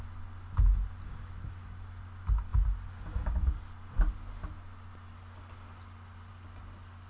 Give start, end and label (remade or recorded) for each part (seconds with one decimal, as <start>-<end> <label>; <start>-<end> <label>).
0.0-7.1 recorded